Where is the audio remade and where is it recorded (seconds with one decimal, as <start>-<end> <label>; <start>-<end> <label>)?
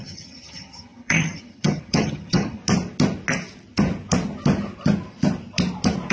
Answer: 0.0-2.6 remade; 2.6-6.1 recorded